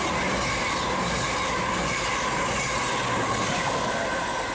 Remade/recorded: recorded